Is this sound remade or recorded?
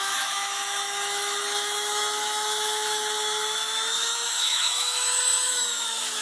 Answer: remade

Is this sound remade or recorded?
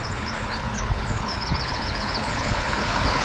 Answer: remade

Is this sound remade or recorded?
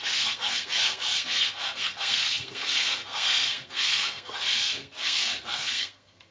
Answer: remade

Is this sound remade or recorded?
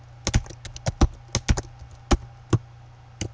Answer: recorded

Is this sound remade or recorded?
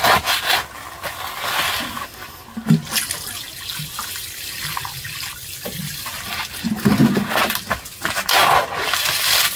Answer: recorded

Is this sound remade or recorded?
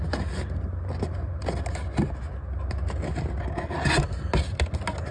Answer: recorded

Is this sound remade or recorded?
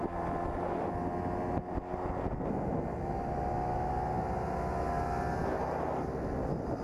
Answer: recorded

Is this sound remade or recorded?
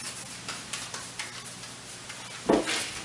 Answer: recorded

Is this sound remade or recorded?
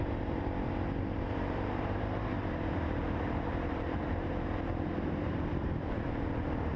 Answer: remade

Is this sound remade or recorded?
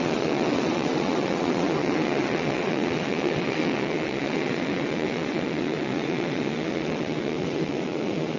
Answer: remade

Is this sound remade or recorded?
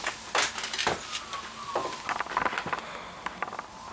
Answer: recorded